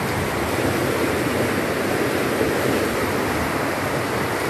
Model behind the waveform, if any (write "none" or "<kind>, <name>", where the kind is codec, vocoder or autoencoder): none